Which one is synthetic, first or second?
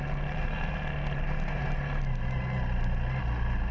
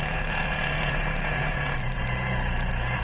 second